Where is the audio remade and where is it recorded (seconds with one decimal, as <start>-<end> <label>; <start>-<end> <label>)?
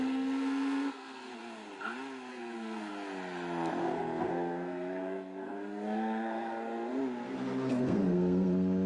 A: 0.0-1.3 remade; 1.3-2.3 recorded; 2.3-2.9 remade; 2.9-3.8 recorded; 3.8-7.0 remade; 7.0-7.7 recorded; 7.7-8.9 remade